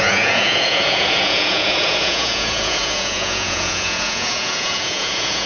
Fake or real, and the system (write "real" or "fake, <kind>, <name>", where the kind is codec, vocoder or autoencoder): fake, vocoder, Vocos